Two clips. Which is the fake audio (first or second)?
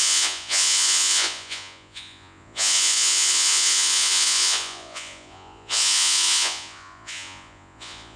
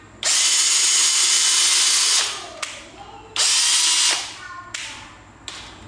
first